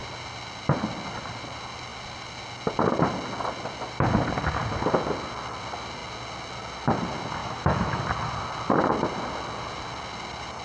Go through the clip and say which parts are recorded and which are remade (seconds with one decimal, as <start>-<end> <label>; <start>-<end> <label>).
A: 0.0-7.4 recorded; 7.4-8.0 remade; 8.0-10.6 recorded